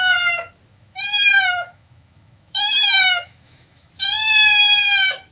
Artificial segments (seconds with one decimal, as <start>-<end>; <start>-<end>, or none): 0.7-3.9